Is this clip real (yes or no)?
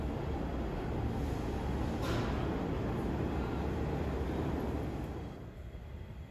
yes